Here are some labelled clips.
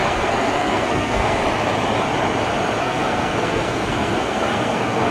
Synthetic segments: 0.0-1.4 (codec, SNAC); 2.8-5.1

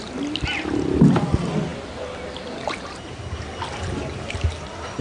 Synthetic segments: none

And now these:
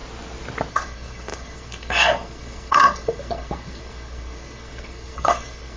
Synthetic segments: 0.7-5.8 (codec, SNAC)